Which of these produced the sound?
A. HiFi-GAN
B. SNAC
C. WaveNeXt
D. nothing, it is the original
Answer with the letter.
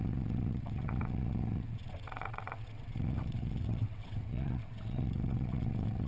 C